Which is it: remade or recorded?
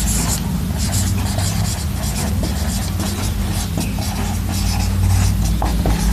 recorded